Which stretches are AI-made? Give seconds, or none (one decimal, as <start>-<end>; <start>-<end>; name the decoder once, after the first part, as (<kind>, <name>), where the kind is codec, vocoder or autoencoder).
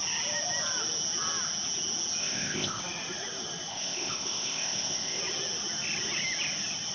2.2-2.8 (codec, ZipCodec); 3.7-5.2